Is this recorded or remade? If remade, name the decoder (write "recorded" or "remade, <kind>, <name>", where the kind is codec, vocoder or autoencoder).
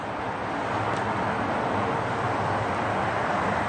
remade, vocoder, BigVGAN v2